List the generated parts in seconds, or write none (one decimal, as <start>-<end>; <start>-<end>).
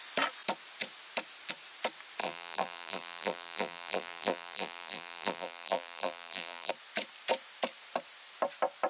2.2-6.7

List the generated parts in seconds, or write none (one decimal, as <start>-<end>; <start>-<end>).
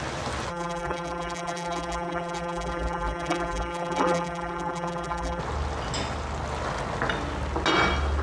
0.5-5.4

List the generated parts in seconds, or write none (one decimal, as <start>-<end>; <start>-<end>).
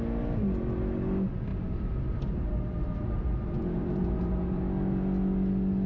1.5-4.6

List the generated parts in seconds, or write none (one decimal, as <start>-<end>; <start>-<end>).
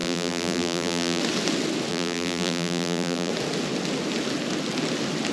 0.0-1.2; 1.9-3.3